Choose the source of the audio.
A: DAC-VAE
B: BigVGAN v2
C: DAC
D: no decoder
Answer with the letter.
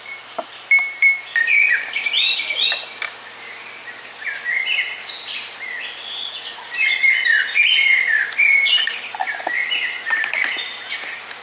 B